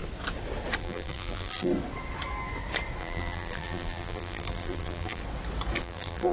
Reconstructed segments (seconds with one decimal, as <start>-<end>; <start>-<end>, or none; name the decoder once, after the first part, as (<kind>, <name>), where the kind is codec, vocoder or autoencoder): 0.8-1.7 (vocoder, BigVGAN v2); 3.0-5.2; 5.8-6.3